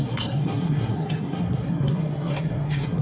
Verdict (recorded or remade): remade